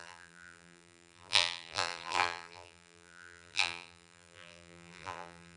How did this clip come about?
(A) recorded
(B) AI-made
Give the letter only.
B